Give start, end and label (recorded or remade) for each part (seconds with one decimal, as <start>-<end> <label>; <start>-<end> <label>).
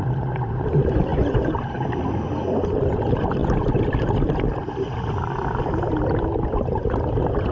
0.0-7.5 recorded